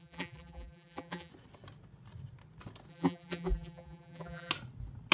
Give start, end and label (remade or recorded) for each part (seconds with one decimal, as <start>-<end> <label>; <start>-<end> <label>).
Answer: 0.0-1.3 remade; 1.3-2.9 recorded; 2.9-4.5 remade; 4.5-5.1 recorded